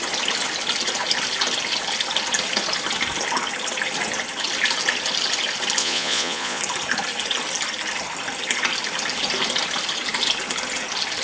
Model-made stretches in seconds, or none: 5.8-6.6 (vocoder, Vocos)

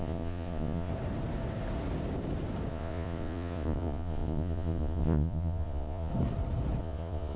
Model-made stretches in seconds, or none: 0.0-0.9 (vocoder, Vocos); 2.7-6.1; 6.8-7.4

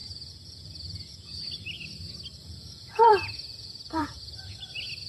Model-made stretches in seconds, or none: 0.0-1.5 (vocoder, Vocos); 2.4-4.6

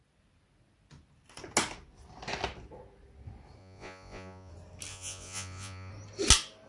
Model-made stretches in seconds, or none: 3.6-4.5 (vocoder, Vocos); 4.9-5.9

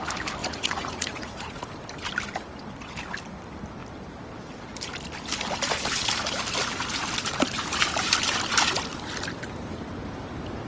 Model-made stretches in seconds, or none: 0.4-1.6 (vocoder, Vocos)